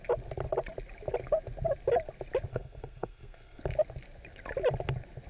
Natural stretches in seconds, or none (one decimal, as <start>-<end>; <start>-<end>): 0.0-2.5; 3.6-5.3